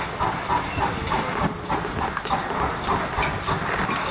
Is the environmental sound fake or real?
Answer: real